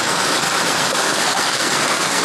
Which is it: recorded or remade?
remade